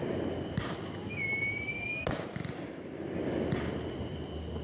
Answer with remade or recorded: recorded